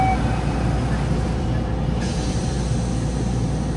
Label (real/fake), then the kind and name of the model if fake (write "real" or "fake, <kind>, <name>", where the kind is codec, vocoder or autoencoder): real